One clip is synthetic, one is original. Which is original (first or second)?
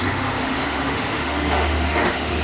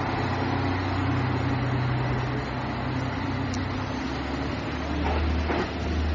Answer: second